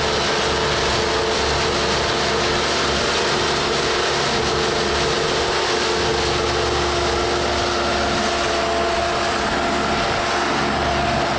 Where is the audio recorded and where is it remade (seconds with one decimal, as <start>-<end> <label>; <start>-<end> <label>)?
0.0-11.4 recorded